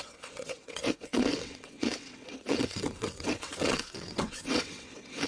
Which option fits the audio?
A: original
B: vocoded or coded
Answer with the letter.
B